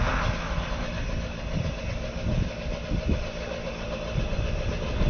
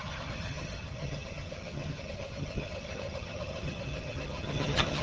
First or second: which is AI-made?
second